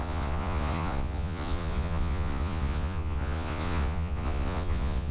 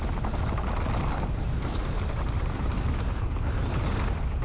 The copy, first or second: first